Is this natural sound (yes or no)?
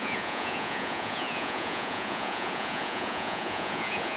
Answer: no